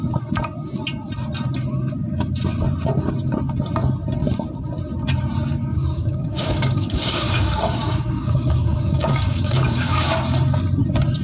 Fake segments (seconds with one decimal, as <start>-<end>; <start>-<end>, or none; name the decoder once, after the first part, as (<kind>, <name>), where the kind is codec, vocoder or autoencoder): 5.7-10.1 (codec, DAC)